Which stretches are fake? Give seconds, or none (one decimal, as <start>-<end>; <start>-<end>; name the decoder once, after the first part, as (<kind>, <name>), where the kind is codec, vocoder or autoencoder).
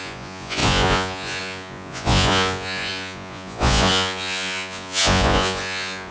0.0-6.1 (vocoder, Vocos)